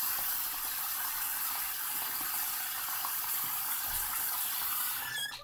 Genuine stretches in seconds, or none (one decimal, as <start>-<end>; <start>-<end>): 0.0-5.4